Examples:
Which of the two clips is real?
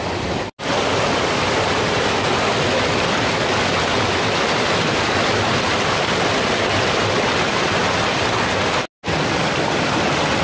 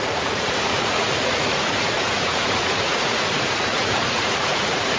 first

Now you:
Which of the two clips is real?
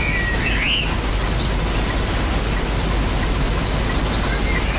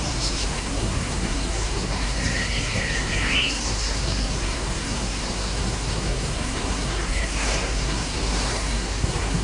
first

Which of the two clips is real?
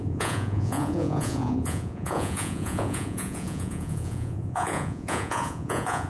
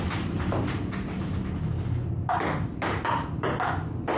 second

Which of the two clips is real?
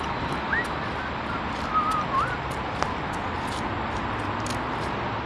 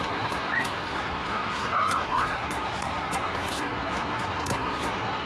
first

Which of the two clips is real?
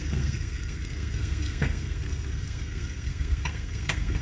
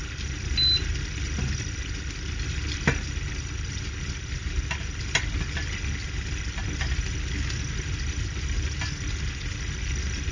second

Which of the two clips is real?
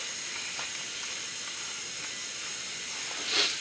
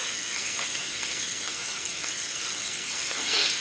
first